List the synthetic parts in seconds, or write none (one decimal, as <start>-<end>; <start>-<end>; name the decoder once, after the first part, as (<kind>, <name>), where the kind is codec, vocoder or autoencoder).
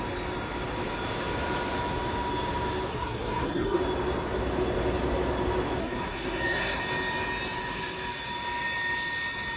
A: 2.9-3.8 (codec, SNAC); 5.8-6.8